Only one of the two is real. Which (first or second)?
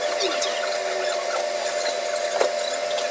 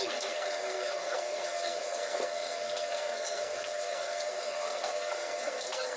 first